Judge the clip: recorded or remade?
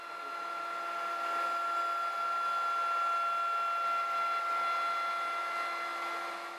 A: recorded